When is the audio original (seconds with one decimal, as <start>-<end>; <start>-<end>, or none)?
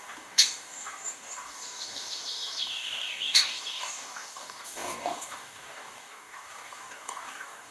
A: none